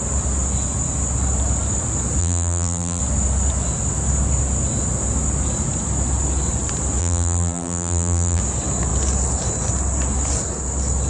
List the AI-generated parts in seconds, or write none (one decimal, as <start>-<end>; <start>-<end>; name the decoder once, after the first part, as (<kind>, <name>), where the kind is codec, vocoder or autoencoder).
2.2-3.0 (vocoder, BigVGAN v2); 7.0-8.4